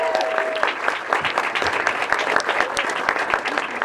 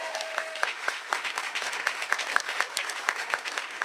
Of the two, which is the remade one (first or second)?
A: second